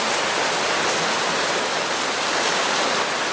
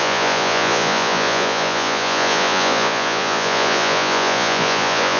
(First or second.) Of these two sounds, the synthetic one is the second